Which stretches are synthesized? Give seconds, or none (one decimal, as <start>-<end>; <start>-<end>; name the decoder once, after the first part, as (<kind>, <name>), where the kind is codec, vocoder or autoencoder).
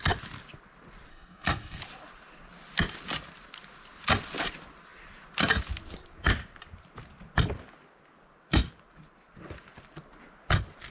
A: 1.1-1.8 (codec, SNAC)